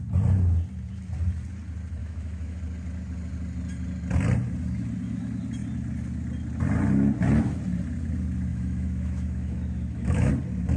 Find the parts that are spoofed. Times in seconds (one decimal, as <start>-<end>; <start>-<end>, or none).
2.0-2.6; 8.5-10.3